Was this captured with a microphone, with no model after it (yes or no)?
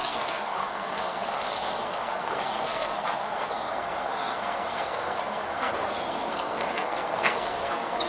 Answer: no